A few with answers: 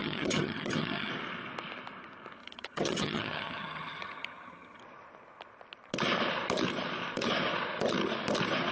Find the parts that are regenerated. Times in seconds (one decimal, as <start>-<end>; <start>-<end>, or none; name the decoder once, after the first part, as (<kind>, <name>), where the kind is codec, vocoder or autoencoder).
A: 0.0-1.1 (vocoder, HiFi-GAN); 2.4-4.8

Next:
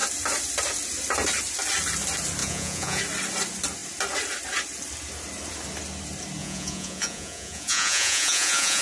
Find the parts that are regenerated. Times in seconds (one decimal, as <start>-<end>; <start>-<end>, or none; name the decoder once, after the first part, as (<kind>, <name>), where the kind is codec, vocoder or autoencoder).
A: 2.4-3.0 (vocoder, Vocos); 6.4-8.8

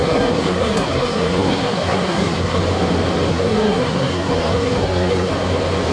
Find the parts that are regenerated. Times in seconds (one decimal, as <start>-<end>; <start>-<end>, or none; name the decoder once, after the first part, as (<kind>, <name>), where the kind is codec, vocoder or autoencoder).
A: 0.0-2.6 (codec, SNAC); 3.3-5.3

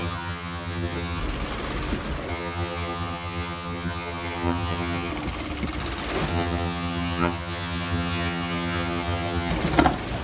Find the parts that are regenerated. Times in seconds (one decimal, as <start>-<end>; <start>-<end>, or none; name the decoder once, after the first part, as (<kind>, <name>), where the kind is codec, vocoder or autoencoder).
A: 0.0-1.2 (vocoder, HiFi-GAN); 2.3-5.1; 6.3-9.5